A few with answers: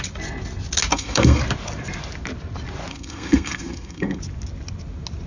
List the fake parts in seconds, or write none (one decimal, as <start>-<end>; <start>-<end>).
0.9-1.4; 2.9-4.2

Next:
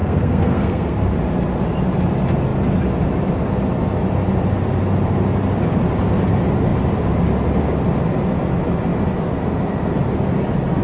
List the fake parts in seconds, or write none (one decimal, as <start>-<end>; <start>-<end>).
0.0-1.0

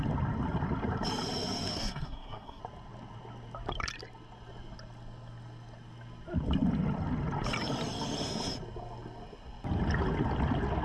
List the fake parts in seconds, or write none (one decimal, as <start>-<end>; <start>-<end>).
1.7-2.6